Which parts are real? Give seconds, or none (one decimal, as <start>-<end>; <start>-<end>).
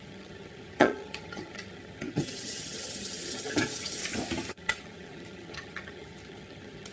4.0-4.5